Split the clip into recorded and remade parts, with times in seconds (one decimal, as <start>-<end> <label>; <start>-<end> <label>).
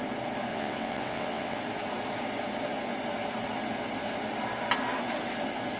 0.0-0.5 recorded; 0.5-1.6 remade; 1.6-5.8 recorded